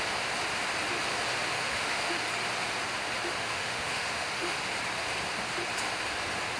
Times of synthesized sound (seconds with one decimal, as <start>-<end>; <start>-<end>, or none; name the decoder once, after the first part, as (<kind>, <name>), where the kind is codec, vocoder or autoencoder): 1.5-2.2 (autoencoder, DAC-VAE); 3.4-4.6